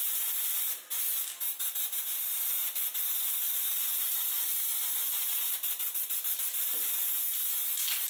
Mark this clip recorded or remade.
recorded